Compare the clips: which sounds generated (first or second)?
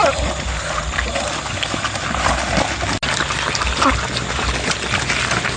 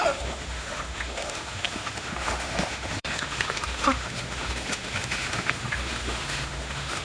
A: second